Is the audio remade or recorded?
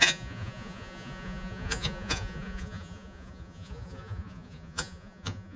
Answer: remade